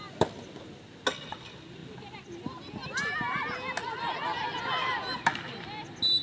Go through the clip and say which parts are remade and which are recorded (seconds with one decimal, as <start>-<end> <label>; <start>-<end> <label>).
0.0-6.2 recorded